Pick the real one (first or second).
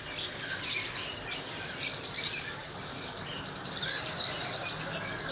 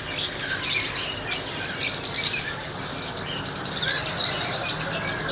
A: second